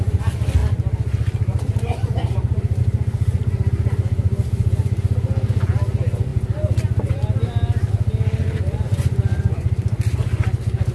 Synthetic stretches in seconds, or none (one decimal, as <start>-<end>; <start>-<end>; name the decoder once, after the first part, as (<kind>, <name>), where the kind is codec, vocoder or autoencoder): 8.4-9.7 (vocoder, Vocos)